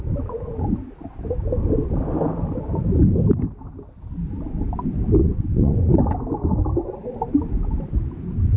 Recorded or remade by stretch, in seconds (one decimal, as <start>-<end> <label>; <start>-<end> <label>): 0.0-5.2 recorded; 5.2-6.0 remade; 6.0-8.6 recorded

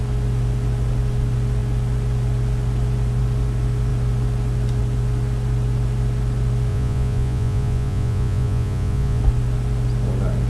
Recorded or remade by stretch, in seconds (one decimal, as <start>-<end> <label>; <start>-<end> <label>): 0.0-6.7 recorded; 6.7-9.2 remade; 9.2-10.5 recorded

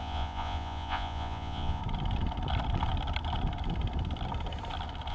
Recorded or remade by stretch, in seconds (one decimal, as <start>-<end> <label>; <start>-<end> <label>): 0.0-1.8 remade; 1.8-5.1 recorded

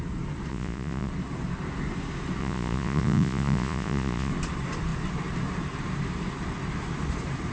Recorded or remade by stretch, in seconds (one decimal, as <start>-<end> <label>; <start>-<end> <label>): 0.0-0.5 recorded; 0.5-1.1 remade; 1.1-2.4 recorded; 2.4-4.3 remade; 4.3-7.5 recorded

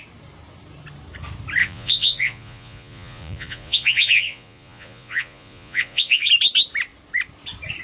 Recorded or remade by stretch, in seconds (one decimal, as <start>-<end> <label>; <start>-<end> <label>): 0.0-1.6 recorded; 1.6-6.3 remade; 6.3-7.8 recorded

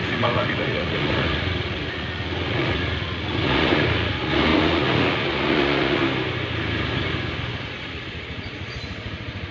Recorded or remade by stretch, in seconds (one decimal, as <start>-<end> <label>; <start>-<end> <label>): 0.0-6.0 remade; 6.0-7.6 recorded; 7.6-9.5 remade

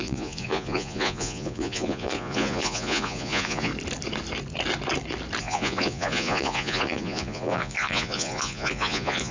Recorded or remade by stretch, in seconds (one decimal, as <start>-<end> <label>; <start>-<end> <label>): 0.0-3.7 remade; 3.7-5.4 recorded; 5.4-9.3 remade

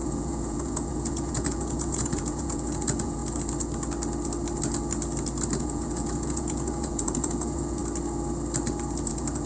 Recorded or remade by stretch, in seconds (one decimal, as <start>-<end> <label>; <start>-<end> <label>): 0.0-3.2 remade; 3.2-5.6 recorded; 5.6-7.8 remade; 7.8-9.1 recorded; 9.1-9.5 remade